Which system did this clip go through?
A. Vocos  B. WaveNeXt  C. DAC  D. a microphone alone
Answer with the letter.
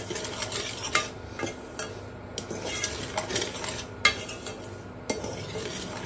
D